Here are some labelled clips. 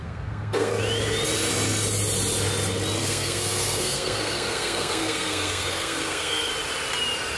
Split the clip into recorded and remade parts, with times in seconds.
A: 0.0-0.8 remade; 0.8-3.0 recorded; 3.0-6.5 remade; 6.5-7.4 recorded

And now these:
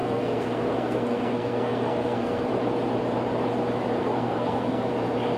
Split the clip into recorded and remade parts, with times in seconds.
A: 0.0-2.5 remade; 2.5-4.0 recorded; 4.0-4.9 remade; 4.9-5.4 recorded

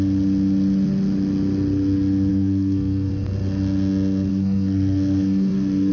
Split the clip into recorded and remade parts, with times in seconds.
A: 0.0-2.3 recorded; 2.3-3.1 remade; 3.1-4.3 recorded; 4.3-5.9 remade

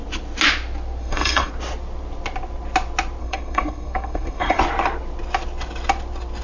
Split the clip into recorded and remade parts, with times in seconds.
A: 0.0-1.0 recorded; 1.0-1.5 remade; 1.5-3.2 recorded; 3.2-4.6 remade; 4.6-6.4 recorded

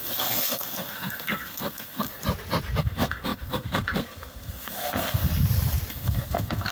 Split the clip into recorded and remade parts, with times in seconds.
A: 0.0-2.2 remade; 2.2-2.8 recorded; 2.8-5.3 remade; 5.3-5.9 recorded; 5.9-6.7 remade

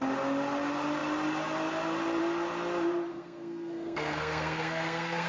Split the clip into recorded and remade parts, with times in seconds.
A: 0.0-3.1 recorded; 3.1-5.3 remade

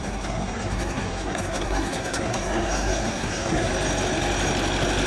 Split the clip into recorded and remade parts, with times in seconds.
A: 0.0-3.7 remade; 3.7-5.1 recorded